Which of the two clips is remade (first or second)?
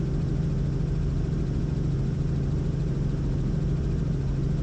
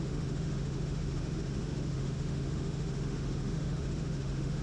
second